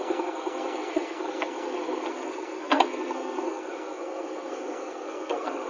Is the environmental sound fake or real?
fake